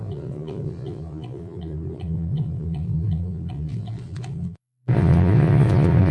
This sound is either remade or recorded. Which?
remade